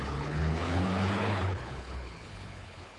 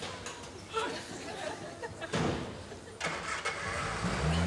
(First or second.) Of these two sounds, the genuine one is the second